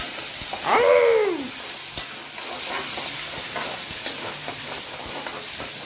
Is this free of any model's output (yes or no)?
yes